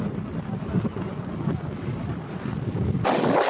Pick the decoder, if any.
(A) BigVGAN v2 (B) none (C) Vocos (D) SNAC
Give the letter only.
B